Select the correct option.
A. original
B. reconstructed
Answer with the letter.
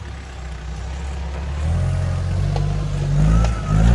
A